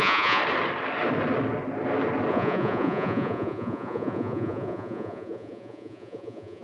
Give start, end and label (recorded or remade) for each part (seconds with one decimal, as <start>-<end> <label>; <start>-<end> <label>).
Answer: 0.0-0.4 remade; 0.4-2.3 recorded; 2.3-6.6 remade